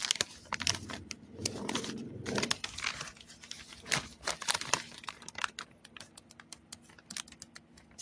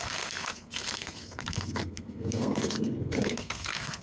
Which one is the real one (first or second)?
first